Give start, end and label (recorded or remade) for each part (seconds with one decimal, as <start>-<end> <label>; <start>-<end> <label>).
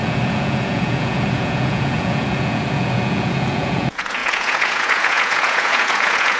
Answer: 0.0-6.4 remade